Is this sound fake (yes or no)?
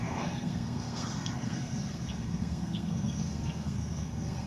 yes